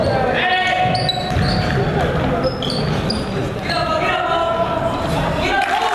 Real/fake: real